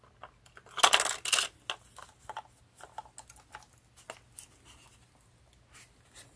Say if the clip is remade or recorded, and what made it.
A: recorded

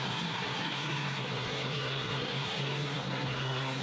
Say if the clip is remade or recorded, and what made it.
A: remade, codec, SNAC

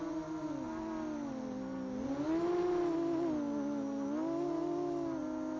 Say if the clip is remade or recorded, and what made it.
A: recorded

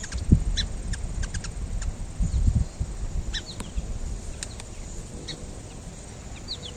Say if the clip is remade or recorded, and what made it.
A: recorded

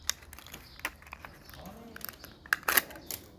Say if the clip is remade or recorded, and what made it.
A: recorded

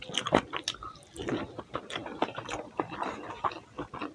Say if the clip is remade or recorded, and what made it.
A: recorded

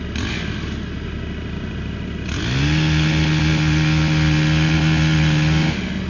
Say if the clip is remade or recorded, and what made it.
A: recorded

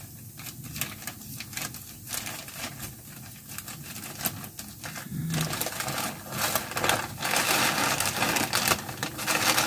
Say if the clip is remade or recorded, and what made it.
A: recorded